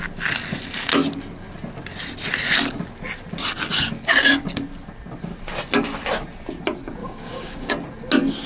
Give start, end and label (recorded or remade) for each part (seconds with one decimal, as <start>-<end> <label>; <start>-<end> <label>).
0.0-7.0 recorded; 7.0-7.7 remade; 7.7-8.5 recorded